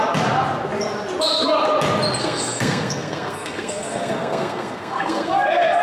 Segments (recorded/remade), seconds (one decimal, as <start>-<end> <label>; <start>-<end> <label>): 0.0-2.2 recorded; 2.2-5.8 remade